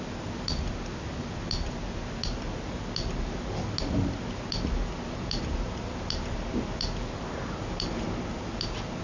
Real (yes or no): yes